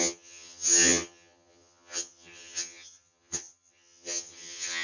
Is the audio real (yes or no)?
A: no